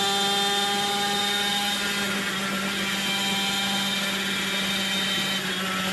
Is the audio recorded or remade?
recorded